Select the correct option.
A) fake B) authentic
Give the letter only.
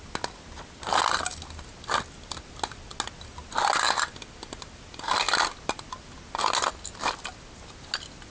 B